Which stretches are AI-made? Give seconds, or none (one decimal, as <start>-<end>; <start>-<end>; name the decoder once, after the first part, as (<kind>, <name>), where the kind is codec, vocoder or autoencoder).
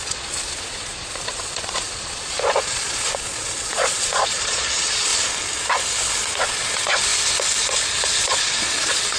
0.0-5.1 (vocoder, Vocos); 6.4-7.1; 8.2-9.2